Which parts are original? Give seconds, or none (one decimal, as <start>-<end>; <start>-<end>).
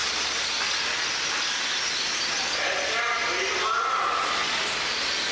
0.0-5.3